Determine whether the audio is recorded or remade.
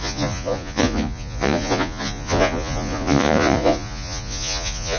remade